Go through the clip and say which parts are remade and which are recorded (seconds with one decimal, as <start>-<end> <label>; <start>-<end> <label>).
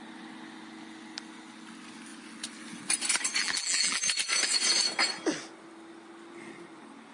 0.0-3.4 recorded; 3.4-4.0 remade; 4.0-7.1 recorded